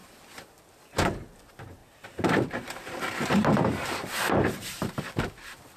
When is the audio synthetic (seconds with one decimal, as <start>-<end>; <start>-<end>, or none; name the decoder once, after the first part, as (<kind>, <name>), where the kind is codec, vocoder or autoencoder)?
1.8-5.3 (vocoder, BigVGAN v2)